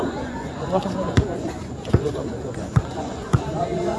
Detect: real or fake fake